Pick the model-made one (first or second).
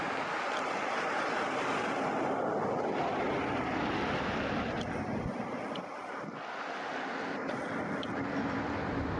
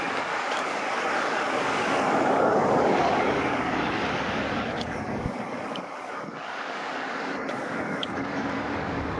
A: second